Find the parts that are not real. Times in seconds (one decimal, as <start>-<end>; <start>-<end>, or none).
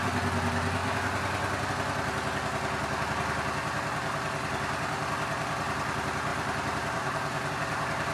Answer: 6.3-7.5